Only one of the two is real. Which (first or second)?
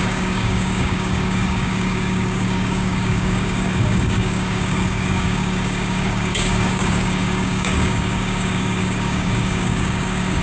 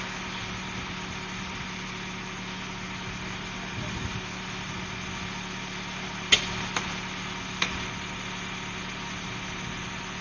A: second